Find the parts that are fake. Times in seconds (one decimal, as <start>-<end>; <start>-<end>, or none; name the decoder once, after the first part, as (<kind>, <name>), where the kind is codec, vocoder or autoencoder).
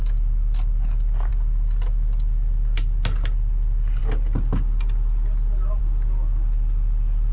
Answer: none